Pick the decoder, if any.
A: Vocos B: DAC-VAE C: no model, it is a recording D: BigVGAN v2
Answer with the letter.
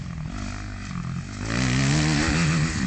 C